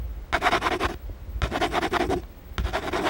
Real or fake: real